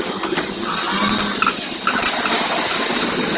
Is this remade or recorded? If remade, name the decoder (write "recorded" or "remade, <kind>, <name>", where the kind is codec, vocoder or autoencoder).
remade, vocoder, BigVGAN v2